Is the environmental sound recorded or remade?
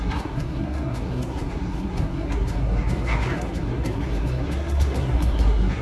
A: remade